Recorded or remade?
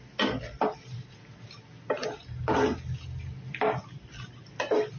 recorded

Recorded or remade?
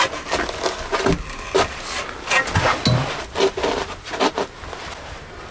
recorded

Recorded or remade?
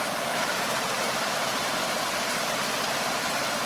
remade